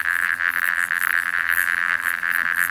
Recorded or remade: remade